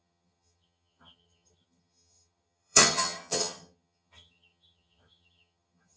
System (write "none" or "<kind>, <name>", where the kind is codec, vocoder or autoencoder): vocoder, HiFi-GAN